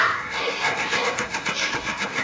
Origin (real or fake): fake